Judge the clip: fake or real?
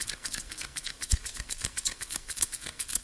fake